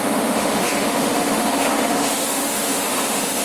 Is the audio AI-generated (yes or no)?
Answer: yes